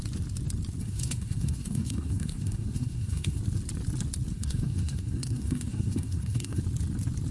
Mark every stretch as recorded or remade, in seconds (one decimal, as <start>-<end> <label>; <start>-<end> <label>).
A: 0.0-0.8 recorded; 0.8-3.4 remade; 3.4-4.3 recorded; 4.3-6.6 remade; 6.6-7.3 recorded